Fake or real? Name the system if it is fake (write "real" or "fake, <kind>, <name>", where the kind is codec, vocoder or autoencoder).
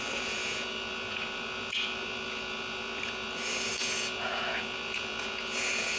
fake, vocoder, Vocos